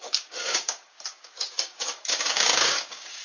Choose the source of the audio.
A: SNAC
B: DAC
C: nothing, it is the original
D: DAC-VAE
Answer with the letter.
B